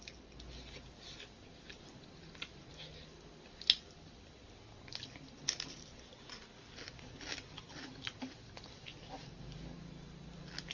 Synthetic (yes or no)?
no